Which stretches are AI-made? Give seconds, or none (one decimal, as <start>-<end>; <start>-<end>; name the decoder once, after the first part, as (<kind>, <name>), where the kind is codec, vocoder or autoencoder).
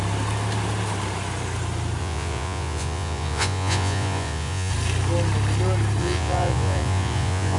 2.0-4.7 (vocoder, Vocos); 6.0-7.6